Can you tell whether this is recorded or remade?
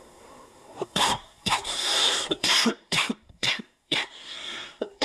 remade